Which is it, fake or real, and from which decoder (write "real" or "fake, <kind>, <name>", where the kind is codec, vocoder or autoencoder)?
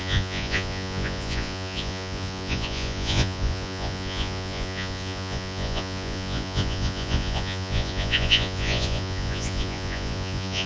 fake, vocoder, Vocos